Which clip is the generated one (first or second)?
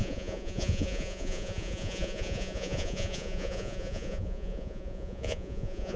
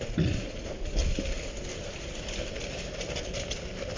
first